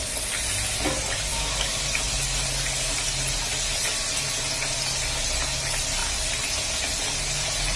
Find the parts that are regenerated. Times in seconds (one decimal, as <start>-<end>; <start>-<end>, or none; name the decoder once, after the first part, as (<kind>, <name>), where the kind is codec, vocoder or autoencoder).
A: 1.3-1.8 (autoencoder, DAC-VAE)

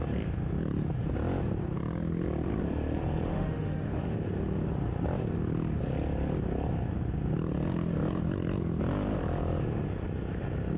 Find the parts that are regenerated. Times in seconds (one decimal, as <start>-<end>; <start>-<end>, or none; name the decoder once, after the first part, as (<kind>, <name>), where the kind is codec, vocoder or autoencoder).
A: 3.3-4.0 (autoencoder, DAC-VAE)

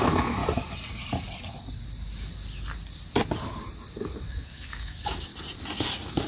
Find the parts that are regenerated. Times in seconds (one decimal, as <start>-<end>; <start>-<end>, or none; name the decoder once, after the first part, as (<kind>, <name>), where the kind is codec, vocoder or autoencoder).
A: 0.0-0.4 (autoencoder, DAC-VAE); 4.2-5.3

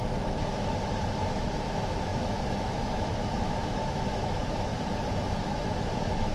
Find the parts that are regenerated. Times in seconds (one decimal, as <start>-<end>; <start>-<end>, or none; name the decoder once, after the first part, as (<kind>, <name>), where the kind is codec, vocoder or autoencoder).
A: 1.4-4.7 (autoencoder, DAC-VAE); 5.3-6.3

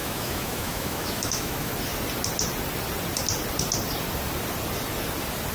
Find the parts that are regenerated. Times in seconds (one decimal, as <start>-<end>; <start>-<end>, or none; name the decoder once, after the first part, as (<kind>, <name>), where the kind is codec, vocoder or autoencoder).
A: 0.0-1.7 (autoencoder, DAC-VAE)

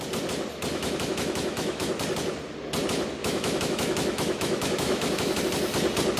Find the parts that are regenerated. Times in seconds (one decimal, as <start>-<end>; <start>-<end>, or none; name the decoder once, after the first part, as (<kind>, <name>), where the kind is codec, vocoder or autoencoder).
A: 0.7-1.9 (autoencoder, DAC-VAE); 3.2-5.4

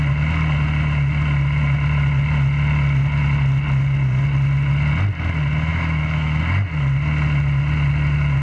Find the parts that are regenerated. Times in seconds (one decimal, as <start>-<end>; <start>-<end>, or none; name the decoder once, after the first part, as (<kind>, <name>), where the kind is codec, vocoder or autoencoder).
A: 5.7-6.4 (autoencoder, DAC-VAE)